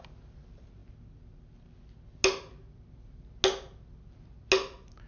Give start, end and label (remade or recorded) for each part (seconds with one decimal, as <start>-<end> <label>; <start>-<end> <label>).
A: 0.0-5.1 recorded